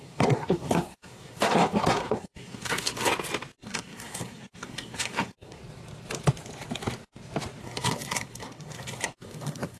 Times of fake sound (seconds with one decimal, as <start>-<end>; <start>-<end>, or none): 0.0-3.1; 3.6-5.6; 7.6-9.8